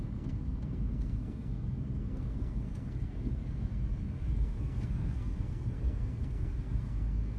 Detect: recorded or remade remade